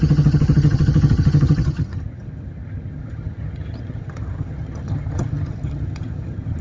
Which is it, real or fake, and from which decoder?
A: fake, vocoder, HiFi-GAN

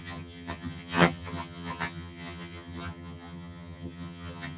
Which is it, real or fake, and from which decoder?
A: fake, vocoder, HiFi-GAN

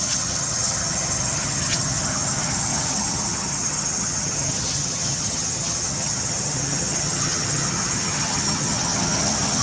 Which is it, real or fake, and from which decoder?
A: fake, vocoder, HiFi-GAN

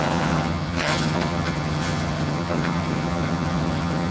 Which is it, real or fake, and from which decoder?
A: fake, vocoder, HiFi-GAN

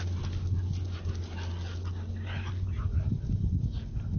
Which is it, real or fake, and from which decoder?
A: real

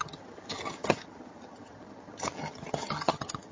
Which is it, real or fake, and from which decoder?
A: fake, vocoder, HiFi-GAN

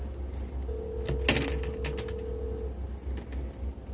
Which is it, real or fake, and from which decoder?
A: real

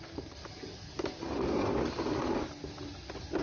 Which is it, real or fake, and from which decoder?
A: real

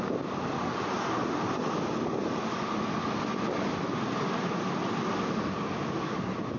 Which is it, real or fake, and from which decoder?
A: real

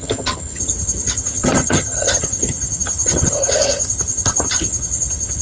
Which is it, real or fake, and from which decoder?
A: fake, vocoder, HiFi-GAN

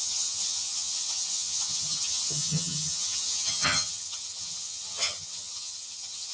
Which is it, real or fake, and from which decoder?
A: fake, vocoder, HiFi-GAN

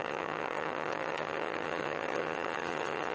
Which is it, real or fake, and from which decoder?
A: fake, vocoder, HiFi-GAN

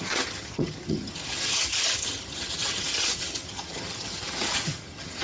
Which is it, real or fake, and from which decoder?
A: fake, vocoder, HiFi-GAN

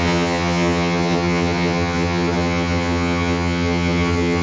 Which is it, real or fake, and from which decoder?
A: fake, vocoder, HiFi-GAN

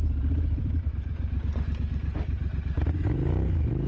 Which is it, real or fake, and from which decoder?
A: real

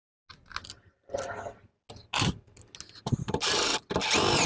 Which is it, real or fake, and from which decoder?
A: real